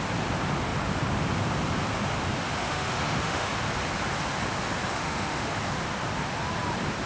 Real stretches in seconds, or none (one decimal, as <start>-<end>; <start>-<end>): 0.0-2.6; 3.5-4.9; 5.5-7.1